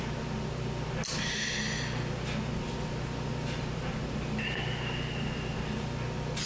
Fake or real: real